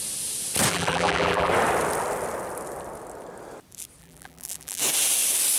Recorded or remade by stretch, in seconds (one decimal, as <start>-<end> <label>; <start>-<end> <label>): 0.0-0.7 recorded; 0.7-1.5 remade; 1.5-4.0 recorded; 4.0-4.8 remade; 4.8-5.6 recorded